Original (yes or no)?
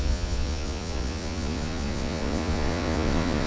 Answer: no